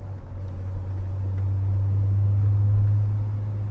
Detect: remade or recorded recorded